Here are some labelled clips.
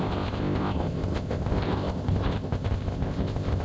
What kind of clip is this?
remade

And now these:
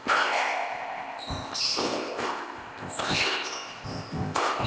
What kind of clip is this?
remade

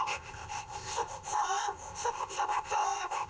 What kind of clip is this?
remade